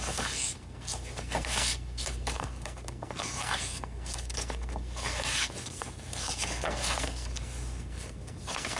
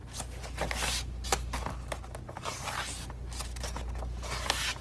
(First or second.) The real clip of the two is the second